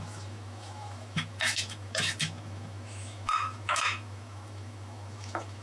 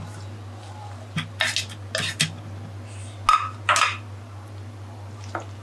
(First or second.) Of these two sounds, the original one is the second